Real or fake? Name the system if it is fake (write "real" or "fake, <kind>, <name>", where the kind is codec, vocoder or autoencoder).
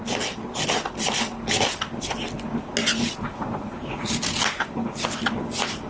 real